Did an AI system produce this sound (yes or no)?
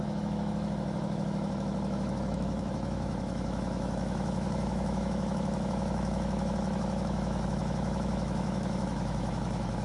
yes